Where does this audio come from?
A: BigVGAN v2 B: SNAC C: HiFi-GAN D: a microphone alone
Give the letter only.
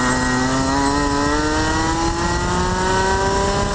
D